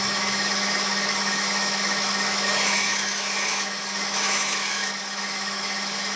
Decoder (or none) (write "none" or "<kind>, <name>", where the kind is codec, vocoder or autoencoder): autoencoder, DAC-VAE